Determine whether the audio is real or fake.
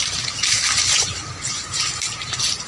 fake